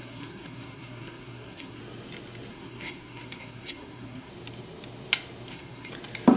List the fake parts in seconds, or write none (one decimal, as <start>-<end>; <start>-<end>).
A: 0.0-1.8; 2.5-4.3; 5.5-5.9